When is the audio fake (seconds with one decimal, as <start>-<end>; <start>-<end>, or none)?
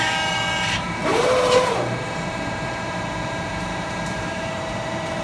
0.0-5.2